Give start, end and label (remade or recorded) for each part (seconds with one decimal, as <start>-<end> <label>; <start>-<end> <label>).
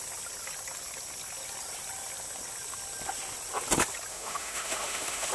0.0-4.1 recorded; 4.1-5.3 remade